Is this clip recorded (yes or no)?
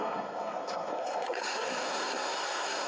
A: no